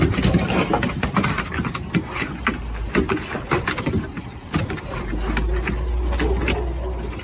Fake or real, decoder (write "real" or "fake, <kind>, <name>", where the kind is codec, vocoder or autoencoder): real